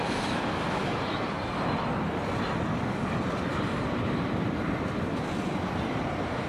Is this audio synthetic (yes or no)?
yes